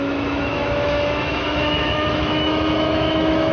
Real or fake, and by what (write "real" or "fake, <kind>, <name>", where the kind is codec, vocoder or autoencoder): fake, autoencoder, DAC-VAE